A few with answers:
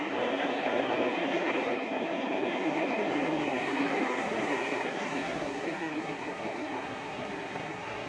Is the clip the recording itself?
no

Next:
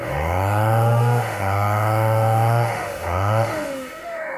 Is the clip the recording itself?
no